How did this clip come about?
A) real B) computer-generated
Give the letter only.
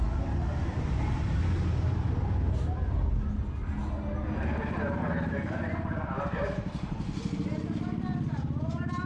A